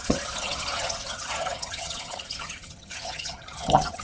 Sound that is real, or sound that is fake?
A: fake